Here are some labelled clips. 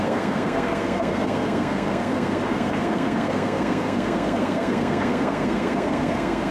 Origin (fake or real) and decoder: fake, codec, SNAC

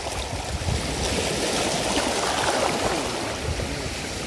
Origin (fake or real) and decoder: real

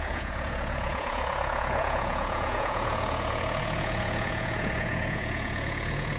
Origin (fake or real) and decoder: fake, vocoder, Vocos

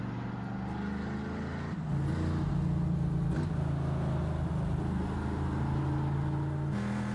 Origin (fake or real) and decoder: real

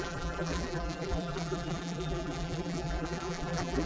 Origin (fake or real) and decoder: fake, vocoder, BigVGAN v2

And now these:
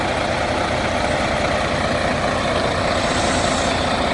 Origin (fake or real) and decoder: real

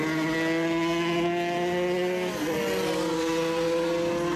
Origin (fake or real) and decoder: real